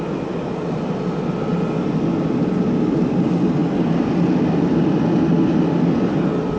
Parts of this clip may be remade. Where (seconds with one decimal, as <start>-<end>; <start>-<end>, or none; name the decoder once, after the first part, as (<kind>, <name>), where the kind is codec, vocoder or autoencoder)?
none